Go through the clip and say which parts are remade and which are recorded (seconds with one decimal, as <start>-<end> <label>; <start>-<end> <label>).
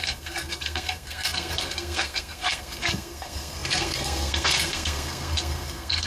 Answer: 0.0-6.1 remade